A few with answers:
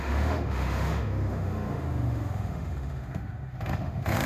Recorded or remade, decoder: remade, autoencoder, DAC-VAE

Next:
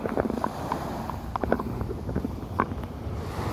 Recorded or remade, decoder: recorded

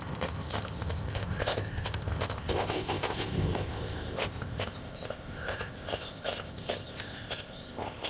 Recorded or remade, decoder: remade, codec, ZipCodec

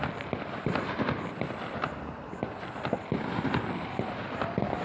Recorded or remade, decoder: recorded